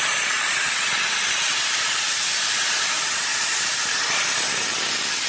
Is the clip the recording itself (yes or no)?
yes